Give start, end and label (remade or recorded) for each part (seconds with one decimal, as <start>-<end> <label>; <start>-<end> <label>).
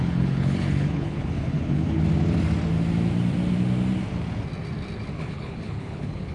0.0-2.0 remade; 2.0-5.1 recorded; 5.1-6.3 remade